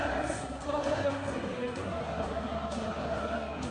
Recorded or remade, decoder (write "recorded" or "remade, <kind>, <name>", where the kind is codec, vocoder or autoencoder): remade, codec, SNAC